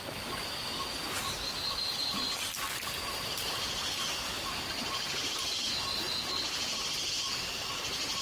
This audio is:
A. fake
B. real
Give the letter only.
B